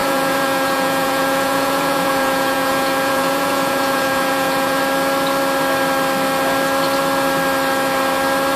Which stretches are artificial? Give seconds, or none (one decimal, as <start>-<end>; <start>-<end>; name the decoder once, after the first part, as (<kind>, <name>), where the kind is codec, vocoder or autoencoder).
0.0-4.8 (vocoder, Vocos)